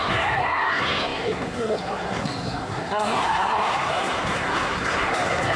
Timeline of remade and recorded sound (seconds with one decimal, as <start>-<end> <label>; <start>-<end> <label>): 0.0-5.6 remade